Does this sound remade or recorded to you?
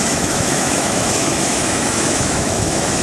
remade